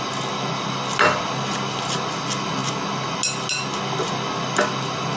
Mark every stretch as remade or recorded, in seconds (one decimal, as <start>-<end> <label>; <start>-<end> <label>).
0.0-5.2 recorded